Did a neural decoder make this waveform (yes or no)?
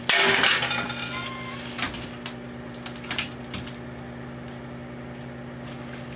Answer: no